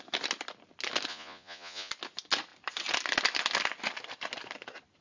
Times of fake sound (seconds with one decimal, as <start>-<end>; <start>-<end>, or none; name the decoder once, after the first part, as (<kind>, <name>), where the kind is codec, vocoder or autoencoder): 1.1-1.9 (vocoder, Vocos)